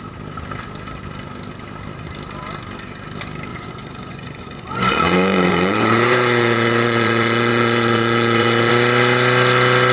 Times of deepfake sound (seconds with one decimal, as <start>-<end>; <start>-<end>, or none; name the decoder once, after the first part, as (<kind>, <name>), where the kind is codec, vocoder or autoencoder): 3.5-8.7 (vocoder, Vocos)